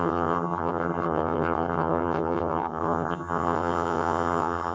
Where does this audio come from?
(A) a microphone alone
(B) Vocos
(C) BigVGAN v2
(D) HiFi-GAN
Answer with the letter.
D